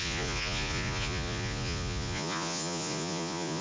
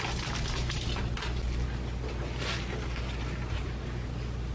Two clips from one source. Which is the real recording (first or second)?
second